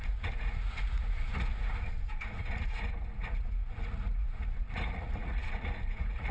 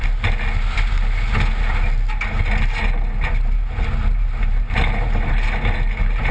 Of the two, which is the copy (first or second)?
first